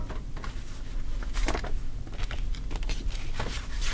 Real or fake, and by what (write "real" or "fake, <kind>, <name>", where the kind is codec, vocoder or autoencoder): real